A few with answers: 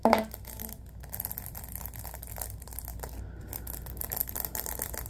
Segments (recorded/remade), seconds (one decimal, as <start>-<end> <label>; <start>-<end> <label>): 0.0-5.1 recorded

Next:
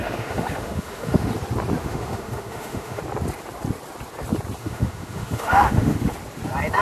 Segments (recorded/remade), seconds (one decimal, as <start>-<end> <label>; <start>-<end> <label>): 0.0-1.3 remade; 1.3-1.8 recorded; 1.8-3.0 remade; 3.0-4.6 recorded; 4.6-6.1 remade; 6.1-6.8 recorded

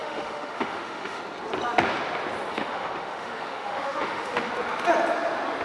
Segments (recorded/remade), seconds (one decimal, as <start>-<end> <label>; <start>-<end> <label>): 0.0-1.2 remade; 1.2-2.5 recorded; 2.5-4.5 remade; 4.5-5.6 recorded

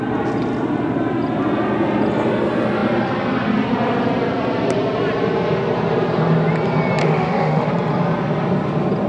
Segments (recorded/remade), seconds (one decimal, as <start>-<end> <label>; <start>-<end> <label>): 0.0-7.0 recorded; 7.0-7.7 remade; 7.7-9.1 recorded